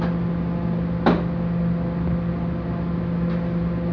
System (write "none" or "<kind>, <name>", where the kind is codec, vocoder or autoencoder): none